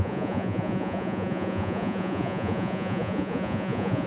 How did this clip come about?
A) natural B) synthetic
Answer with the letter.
B